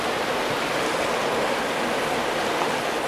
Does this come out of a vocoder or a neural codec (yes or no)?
no